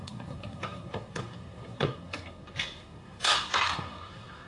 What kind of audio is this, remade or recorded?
remade